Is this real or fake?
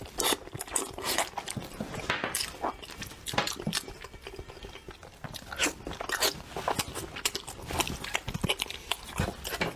real